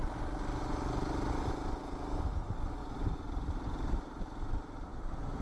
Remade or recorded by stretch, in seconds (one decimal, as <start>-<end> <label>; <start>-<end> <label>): 0.0-2.8 recorded; 2.8-4.2 remade; 4.2-4.9 recorded; 4.9-5.4 remade